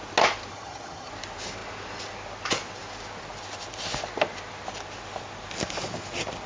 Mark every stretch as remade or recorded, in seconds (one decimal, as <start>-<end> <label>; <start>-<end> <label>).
0.0-0.5 recorded; 0.5-1.1 remade; 1.1-6.5 recorded